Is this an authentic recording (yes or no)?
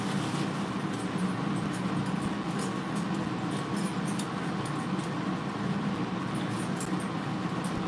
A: yes